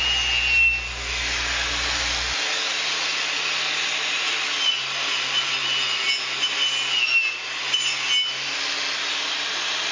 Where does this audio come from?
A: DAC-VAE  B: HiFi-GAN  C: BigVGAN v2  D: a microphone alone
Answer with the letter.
D